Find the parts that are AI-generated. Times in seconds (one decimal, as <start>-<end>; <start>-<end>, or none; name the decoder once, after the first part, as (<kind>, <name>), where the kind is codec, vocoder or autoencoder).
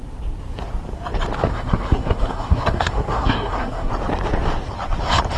1.5-3.9 (codec, SNAC)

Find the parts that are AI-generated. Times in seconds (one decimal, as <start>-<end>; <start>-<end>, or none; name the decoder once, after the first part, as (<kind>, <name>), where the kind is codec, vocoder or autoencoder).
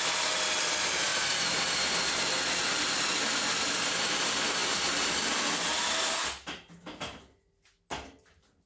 none